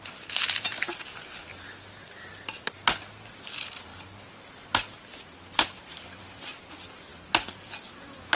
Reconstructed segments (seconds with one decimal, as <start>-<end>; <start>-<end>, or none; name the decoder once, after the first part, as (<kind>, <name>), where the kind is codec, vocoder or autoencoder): none